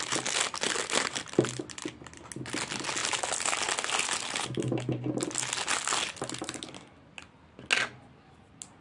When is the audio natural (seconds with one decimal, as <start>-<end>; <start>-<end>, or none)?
0.0-8.8